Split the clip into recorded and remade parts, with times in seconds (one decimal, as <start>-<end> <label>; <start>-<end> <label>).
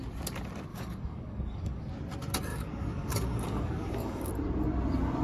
0.0-0.7 recorded; 0.7-1.9 remade; 1.9-2.5 recorded; 2.5-4.3 remade; 4.3-5.2 recorded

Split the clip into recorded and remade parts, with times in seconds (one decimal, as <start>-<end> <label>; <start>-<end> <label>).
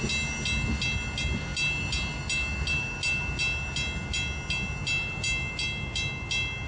0.0-6.7 recorded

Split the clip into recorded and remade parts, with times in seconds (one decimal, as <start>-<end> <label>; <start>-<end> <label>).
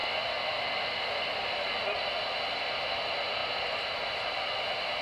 0.0-5.0 recorded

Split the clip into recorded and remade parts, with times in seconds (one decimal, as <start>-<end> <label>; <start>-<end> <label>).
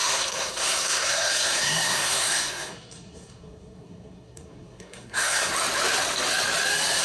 0.0-5.5 remade; 5.5-7.0 recorded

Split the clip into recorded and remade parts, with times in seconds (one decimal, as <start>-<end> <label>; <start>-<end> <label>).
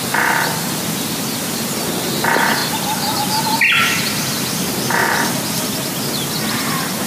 0.0-7.1 recorded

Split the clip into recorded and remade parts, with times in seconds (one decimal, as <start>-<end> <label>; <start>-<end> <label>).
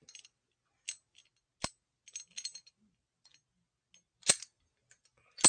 0.0-5.5 recorded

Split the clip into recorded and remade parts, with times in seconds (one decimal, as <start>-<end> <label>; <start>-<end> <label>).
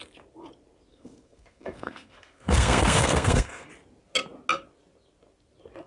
0.0-0.9 recorded; 0.9-3.7 remade; 3.7-5.9 recorded